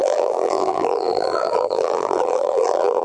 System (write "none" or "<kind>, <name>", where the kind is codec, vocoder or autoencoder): vocoder, BigVGAN v2